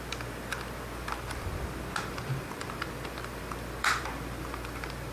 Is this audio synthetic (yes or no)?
yes